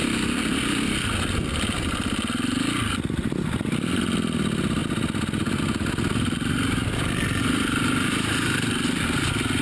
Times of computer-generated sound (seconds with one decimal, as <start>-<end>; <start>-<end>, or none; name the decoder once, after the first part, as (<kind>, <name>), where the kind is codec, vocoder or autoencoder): none